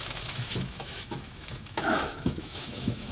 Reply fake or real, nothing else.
fake